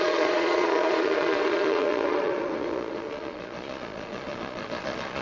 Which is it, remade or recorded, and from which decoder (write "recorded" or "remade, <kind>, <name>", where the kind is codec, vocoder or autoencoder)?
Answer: remade, vocoder, Vocos